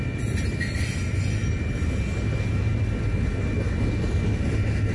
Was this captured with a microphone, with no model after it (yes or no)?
yes